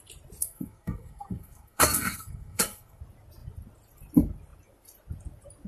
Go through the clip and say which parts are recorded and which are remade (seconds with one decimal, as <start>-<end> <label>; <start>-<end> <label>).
0.0-0.4 recorded; 0.4-3.0 remade; 3.0-5.7 recorded